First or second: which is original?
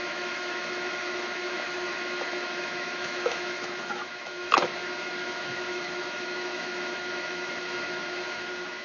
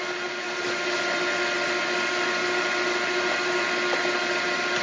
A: second